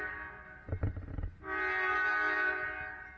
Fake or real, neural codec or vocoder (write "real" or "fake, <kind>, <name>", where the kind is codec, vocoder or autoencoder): real